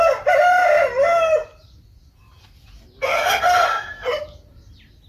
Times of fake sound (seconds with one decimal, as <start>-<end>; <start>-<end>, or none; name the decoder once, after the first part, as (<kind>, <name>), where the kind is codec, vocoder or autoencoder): none